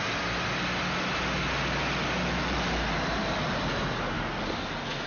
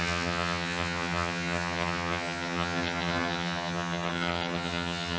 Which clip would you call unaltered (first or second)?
first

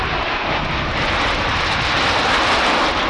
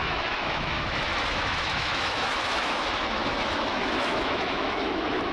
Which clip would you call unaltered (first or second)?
first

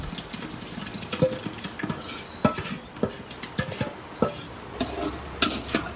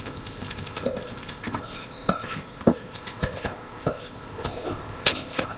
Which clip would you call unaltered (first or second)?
first